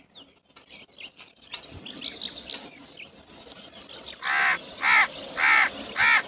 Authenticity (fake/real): real